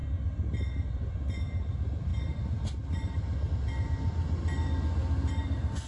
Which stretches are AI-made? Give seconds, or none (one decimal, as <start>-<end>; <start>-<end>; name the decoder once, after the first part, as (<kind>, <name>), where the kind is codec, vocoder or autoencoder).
none